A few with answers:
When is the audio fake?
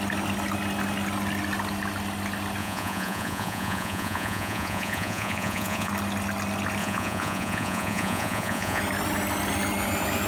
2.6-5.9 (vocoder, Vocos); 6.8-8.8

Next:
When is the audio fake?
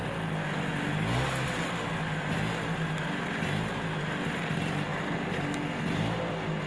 none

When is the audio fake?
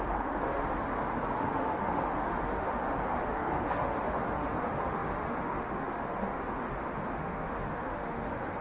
0.0-0.8 (autoencoder, DAC-VAE); 1.5-8.6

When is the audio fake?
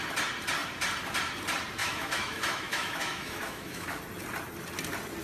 1.8-4.0 (autoencoder, DAC-VAE)